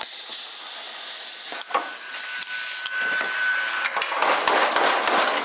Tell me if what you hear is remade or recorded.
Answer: recorded